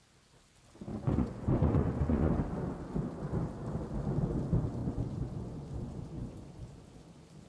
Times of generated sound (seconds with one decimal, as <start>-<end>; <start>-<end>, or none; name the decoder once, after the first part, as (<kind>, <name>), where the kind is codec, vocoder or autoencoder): 0.9-2.3 (vocoder, Vocos); 4.8-7.5